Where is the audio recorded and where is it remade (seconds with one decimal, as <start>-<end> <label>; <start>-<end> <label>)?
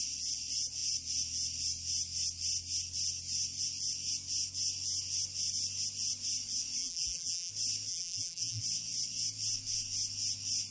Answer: 0.0-6.8 recorded; 6.8-7.5 remade; 7.5-7.9 recorded; 7.9-8.6 remade; 8.6-10.7 recorded